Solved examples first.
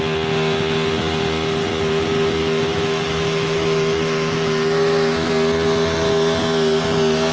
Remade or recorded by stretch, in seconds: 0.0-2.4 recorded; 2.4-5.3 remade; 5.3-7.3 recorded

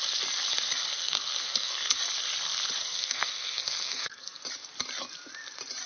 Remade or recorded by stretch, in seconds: 0.0-0.9 recorded; 0.9-2.0 remade; 2.0-2.8 recorded; 2.8-4.4 remade; 4.4-5.9 recorded

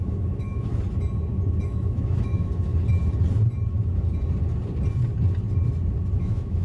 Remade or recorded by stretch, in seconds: 0.0-0.7 remade; 0.7-1.6 recorded; 1.6-2.7 remade; 2.7-6.1 recorded; 6.1-6.6 remade